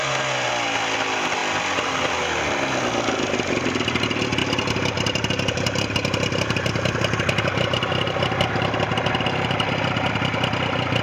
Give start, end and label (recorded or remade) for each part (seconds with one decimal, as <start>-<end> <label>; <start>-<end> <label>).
0.0-1.4 recorded; 1.4-2.0 remade; 2.0-4.4 recorded; 4.4-9.5 remade; 9.5-11.0 recorded